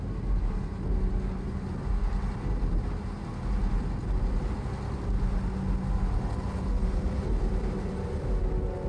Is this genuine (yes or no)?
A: yes